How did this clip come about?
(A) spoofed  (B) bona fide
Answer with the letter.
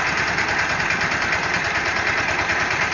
A